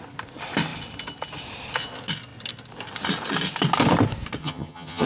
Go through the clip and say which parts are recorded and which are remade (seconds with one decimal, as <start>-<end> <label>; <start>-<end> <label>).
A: 0.0-4.4 recorded; 4.4-5.1 remade